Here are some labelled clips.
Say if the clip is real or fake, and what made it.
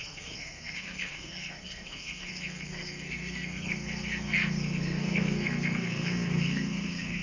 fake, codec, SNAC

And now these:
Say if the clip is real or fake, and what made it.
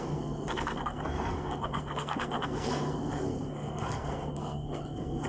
fake, codec, SNAC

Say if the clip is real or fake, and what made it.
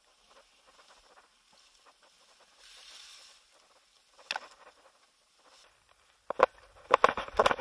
real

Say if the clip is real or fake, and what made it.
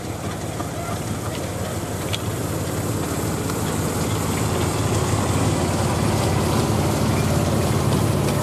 real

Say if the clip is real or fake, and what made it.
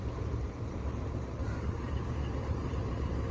fake, vocoder, BigVGAN v2